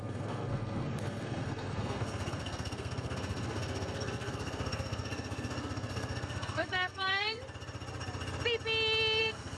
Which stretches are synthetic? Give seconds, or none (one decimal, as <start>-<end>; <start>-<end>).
0.0-7.4; 9.2-9.6